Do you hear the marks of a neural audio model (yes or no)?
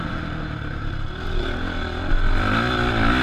no